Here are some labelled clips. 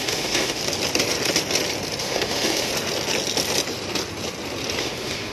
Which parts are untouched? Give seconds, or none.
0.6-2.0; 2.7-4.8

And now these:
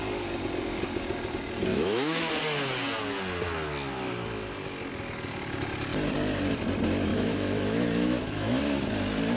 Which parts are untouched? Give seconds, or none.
0.0-1.7; 2.3-7.1; 8.6-9.4

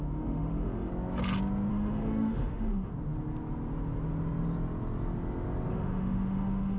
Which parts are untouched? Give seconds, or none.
0.9-1.7; 2.9-5.7

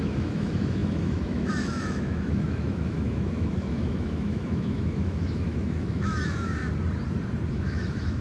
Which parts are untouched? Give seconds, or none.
6.6-7.5

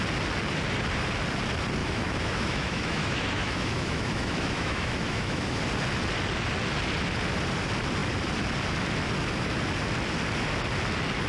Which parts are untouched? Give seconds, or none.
0.0-1.8; 5.6-11.3

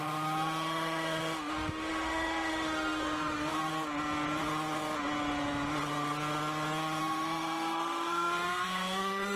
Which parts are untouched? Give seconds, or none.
3.7-7.0

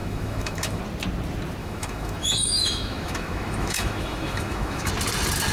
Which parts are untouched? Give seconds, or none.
0.8-1.6; 4.9-5.5

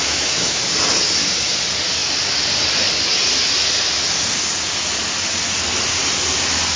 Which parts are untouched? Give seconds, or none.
0.6-6.8